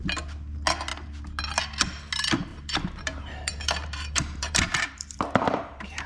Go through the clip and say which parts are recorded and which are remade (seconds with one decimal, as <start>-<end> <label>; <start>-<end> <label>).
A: 0.0-2.5 recorded; 2.5-6.1 remade